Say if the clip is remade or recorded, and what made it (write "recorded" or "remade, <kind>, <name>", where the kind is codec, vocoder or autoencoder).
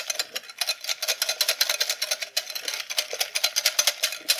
recorded